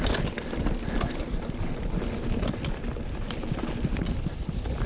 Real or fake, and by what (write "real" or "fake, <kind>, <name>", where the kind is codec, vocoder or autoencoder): real